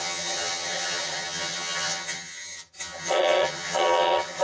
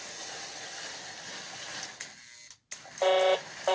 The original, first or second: second